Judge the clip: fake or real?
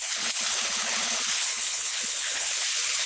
fake